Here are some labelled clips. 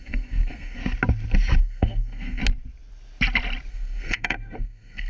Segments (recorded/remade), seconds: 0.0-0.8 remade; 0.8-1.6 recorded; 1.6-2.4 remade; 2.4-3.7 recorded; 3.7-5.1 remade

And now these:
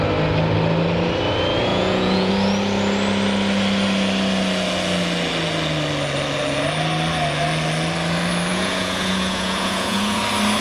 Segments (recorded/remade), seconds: 0.0-1.7 recorded; 1.7-2.3 remade; 2.3-8.5 recorded; 8.5-10.2 remade; 10.2-10.6 recorded

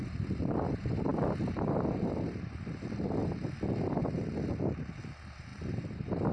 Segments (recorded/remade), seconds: 0.0-6.3 recorded

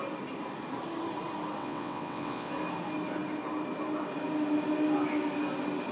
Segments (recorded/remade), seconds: 0.0-1.6 recorded; 1.6-2.5 remade; 2.5-5.9 recorded

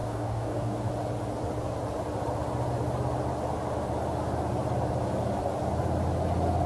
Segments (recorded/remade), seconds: 0.0-0.9 remade; 0.9-6.7 recorded

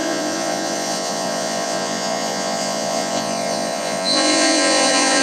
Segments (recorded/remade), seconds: 0.0-5.2 remade

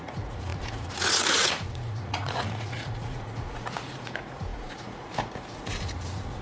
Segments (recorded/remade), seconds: 0.0-6.4 remade